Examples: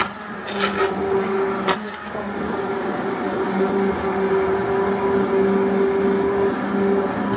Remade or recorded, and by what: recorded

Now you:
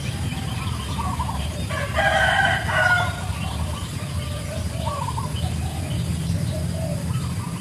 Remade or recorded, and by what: recorded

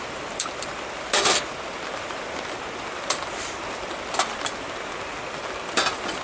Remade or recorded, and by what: remade, vocoder, BigVGAN v2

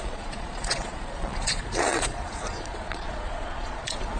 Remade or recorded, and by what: remade, vocoder, Vocos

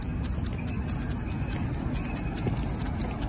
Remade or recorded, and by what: recorded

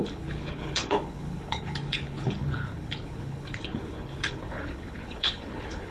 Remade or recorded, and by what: remade, codec, HILCodec